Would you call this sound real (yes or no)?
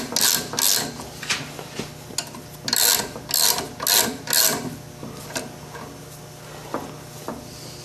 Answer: yes